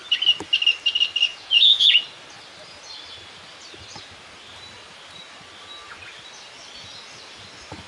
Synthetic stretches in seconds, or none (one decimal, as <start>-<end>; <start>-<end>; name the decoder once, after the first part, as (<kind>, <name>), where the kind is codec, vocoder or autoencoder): 1.3-2.0 (vocoder, Vocos)